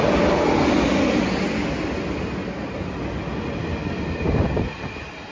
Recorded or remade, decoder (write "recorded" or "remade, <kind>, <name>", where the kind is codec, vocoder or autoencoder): recorded